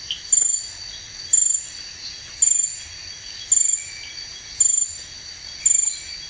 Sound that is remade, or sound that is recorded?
recorded